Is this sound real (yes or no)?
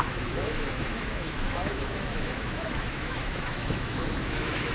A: no